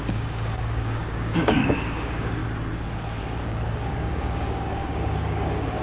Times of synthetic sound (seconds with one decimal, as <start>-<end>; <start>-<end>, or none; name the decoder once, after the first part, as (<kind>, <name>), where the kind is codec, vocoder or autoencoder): 0.0-2.4 (codec, DAC); 3.4-5.8